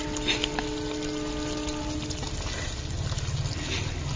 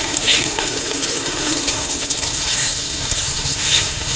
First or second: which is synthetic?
second